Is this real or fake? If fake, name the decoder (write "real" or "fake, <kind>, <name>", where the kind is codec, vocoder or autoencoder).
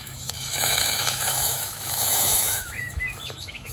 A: fake, autoencoder, DAC-VAE